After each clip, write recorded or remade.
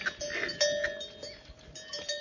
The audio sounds recorded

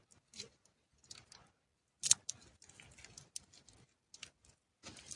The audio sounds recorded